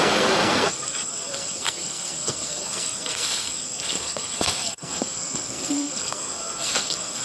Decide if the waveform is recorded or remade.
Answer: remade